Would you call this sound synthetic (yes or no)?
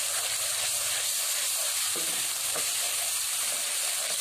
yes